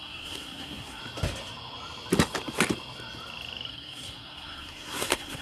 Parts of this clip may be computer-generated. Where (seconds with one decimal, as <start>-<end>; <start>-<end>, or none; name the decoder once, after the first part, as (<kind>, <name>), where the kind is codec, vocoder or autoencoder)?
0.0-1.0 (codec, SNAC); 3.7-5.4